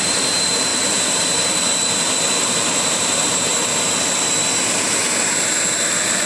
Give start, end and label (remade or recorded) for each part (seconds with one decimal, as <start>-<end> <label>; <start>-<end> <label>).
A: 0.0-3.5 remade; 3.5-4.6 recorded; 4.6-6.3 remade